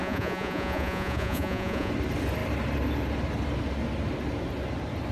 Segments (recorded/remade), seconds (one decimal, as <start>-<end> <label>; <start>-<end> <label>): 0.0-1.9 remade; 1.9-5.1 recorded